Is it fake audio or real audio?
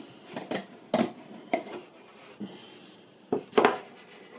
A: real